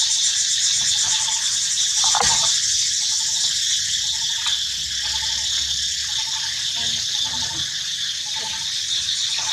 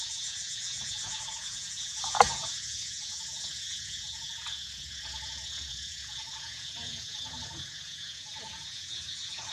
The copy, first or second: second